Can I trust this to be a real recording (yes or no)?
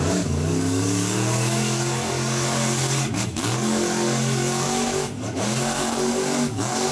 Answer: no